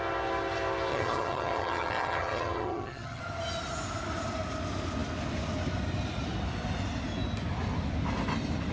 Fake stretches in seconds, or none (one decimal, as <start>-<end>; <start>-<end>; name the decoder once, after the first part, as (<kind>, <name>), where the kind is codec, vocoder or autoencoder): 0.9-3.2 (vocoder, HiFi-GAN)